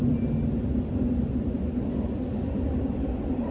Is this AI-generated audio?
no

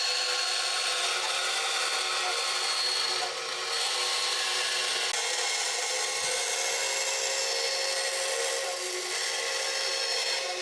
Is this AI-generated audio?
no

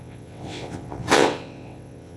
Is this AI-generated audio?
yes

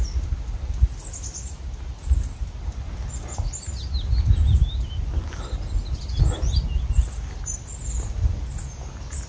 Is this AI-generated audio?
no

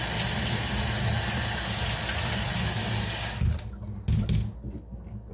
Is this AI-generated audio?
no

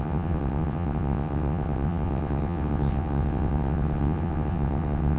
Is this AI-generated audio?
yes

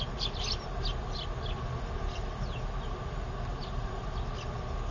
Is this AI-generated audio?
no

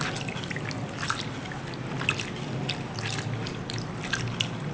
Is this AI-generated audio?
no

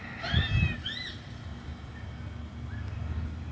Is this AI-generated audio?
no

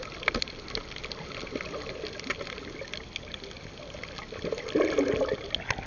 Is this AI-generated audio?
no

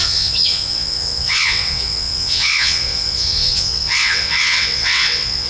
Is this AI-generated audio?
yes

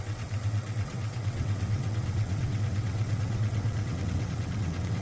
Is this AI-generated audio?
yes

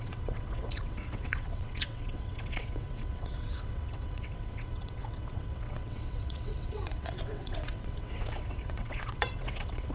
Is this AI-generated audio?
yes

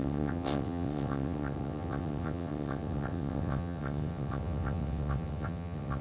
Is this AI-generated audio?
yes